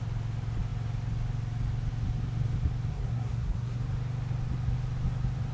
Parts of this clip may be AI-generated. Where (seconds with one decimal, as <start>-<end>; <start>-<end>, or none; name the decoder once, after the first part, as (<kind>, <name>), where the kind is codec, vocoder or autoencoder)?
2.9-3.8 (codec, SNAC)